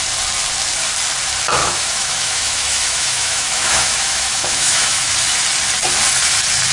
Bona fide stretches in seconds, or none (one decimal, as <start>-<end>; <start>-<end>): 0.0-1.6; 5.1-6.7